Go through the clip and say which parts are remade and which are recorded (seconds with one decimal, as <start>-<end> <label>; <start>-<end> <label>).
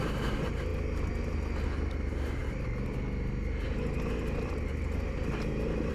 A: 0.0-5.9 recorded